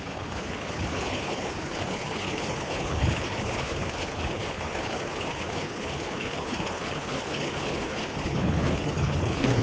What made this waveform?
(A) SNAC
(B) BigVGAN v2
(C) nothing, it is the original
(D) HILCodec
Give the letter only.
D